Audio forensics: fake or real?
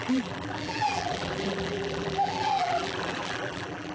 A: fake